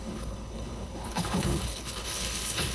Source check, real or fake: fake